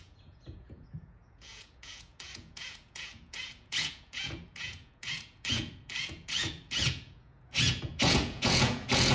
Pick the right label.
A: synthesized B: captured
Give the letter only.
A